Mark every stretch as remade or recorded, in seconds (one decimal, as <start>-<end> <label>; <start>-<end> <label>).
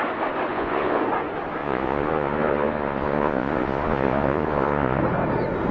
0.0-0.5 recorded; 0.5-1.0 remade; 1.0-1.6 recorded; 1.6-5.0 remade; 5.0-5.7 recorded